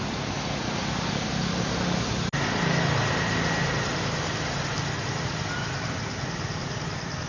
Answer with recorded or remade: recorded